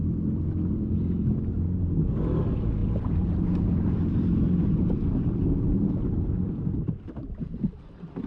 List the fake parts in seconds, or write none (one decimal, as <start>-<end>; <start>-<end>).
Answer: 2.8-6.9